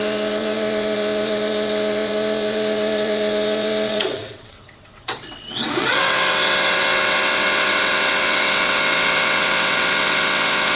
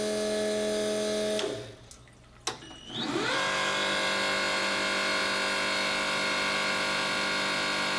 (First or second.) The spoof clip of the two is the first